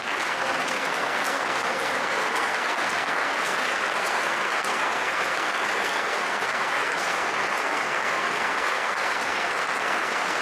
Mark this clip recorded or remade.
remade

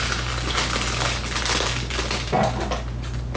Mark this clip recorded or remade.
recorded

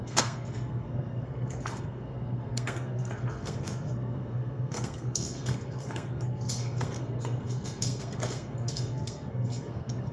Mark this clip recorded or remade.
remade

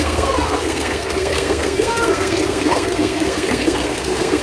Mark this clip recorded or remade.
remade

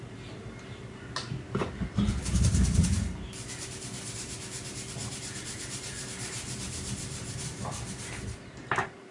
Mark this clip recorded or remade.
remade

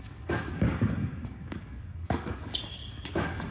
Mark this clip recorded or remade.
remade